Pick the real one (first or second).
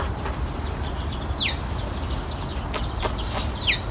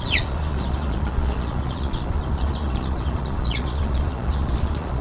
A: first